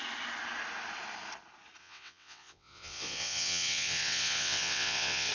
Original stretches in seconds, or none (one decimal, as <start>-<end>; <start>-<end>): 0.0-1.8